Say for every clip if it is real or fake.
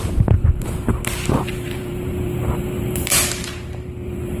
fake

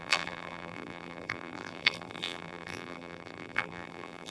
fake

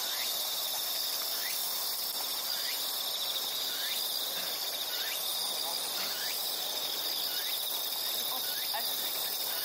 real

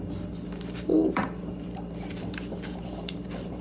fake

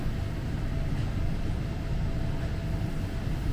real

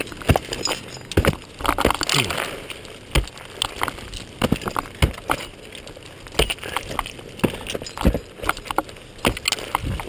real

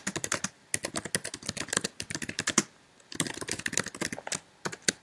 real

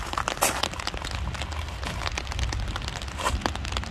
real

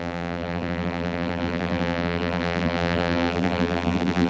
fake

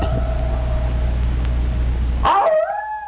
real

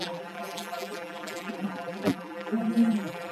fake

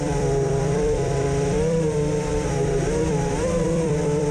fake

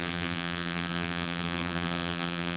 fake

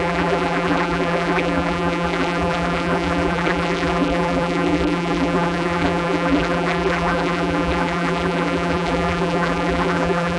fake